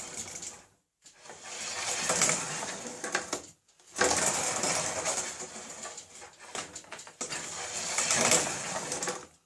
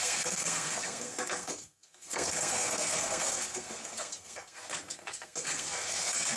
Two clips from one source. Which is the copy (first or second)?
second